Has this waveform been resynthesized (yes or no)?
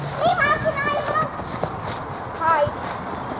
no